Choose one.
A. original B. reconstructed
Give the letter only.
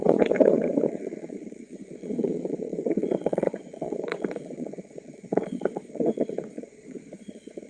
B